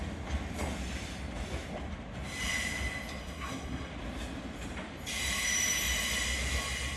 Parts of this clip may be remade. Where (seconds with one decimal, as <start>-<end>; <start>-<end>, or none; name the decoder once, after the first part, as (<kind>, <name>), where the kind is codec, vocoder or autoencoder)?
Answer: 3.2-3.9 (codec, SNAC)